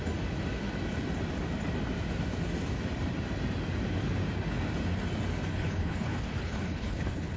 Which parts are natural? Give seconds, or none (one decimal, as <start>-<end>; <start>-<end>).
0.0-5.5